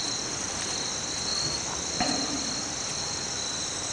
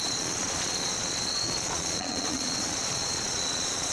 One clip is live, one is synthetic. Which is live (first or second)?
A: first